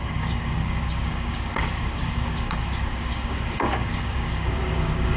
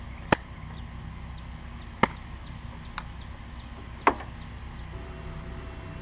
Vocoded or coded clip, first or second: first